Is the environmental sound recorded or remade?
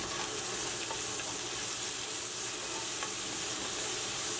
recorded